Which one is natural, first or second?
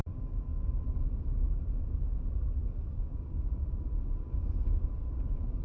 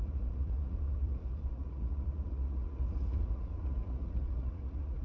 first